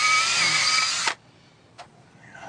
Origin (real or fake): real